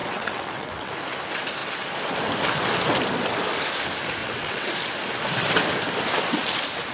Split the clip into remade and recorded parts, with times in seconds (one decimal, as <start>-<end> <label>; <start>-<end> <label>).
0.0-0.9 remade; 0.9-4.2 recorded; 4.2-4.7 remade; 4.7-6.9 recorded